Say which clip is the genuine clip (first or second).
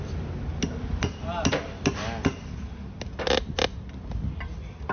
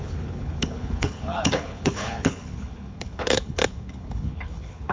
first